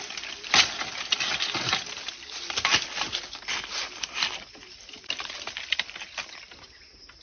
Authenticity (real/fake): real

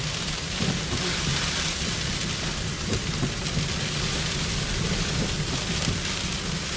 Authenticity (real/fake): fake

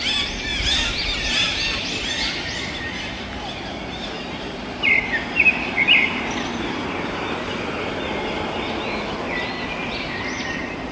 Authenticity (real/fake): real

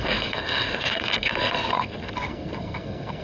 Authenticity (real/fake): fake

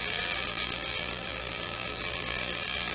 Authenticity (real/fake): fake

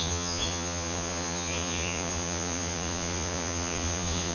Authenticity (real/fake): fake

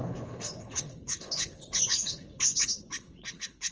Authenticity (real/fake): fake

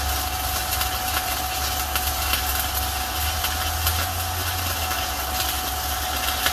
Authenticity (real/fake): real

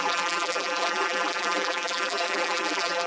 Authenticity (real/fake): fake